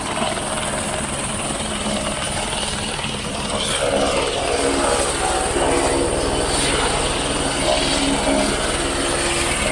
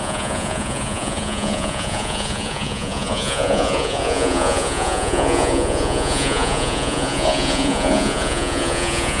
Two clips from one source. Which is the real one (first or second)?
first